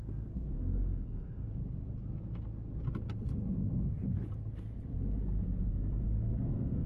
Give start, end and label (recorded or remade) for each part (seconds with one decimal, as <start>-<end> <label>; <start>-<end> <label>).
0.0-1.6 remade; 1.6-5.7 recorded; 5.7-6.9 remade